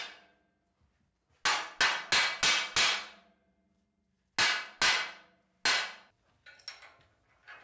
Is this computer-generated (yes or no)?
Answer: no